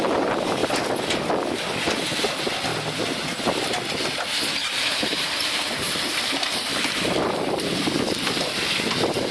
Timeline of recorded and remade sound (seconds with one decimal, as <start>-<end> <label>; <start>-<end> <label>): 0.0-0.6 remade; 0.6-2.3 recorded; 2.3-2.7 remade; 2.7-4.7 recorded; 4.7-6.7 remade; 6.7-7.2 recorded; 7.2-9.3 remade